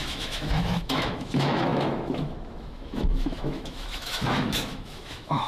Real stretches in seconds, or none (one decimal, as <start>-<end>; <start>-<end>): none